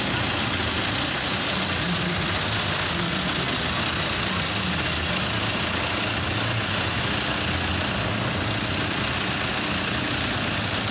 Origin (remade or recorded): recorded